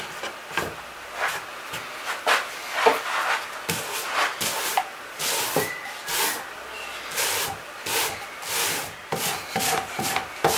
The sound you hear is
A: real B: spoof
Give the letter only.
A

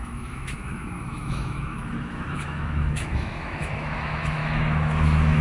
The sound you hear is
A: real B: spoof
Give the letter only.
B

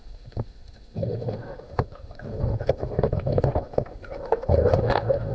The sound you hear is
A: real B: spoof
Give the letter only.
B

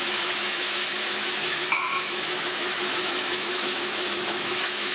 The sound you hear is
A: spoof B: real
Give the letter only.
A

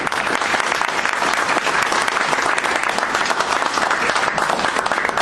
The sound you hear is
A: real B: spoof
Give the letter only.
A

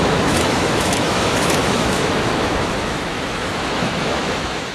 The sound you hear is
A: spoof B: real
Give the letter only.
A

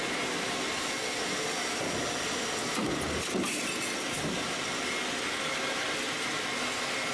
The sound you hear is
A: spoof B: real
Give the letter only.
B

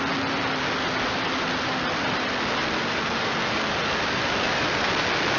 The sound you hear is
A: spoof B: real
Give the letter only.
B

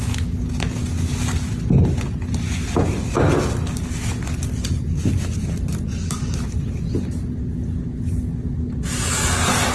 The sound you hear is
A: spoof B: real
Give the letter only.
B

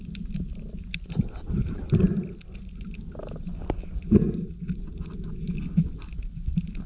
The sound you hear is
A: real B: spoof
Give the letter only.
A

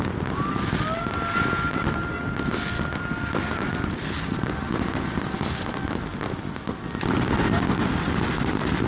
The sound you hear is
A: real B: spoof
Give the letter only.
A